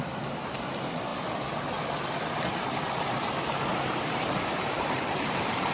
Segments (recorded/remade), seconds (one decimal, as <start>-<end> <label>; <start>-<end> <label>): 0.0-3.7 recorded; 3.7-5.7 remade